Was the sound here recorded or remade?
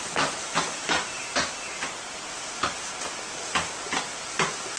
recorded